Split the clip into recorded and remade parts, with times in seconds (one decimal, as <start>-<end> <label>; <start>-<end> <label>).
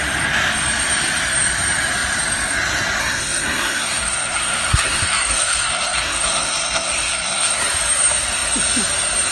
0.0-3.0 recorded; 3.0-7.6 remade; 7.6-9.3 recorded